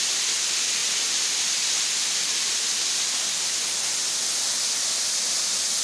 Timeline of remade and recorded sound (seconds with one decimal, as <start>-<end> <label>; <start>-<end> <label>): 0.0-5.8 recorded